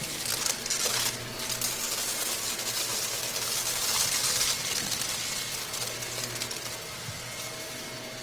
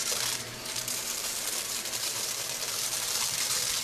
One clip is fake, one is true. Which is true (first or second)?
first